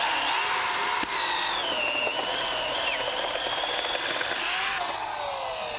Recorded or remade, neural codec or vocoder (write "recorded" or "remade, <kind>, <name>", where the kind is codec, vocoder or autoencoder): recorded